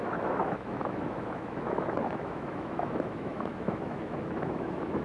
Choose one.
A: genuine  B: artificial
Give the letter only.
B